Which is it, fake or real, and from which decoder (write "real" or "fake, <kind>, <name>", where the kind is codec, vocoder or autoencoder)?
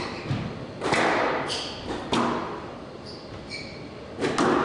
real